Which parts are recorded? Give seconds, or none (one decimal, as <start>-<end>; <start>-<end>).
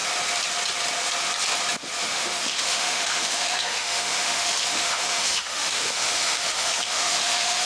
0.0-2.0